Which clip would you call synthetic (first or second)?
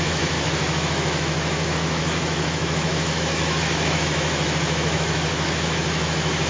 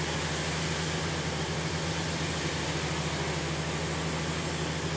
first